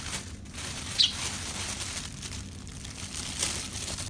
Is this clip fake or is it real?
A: real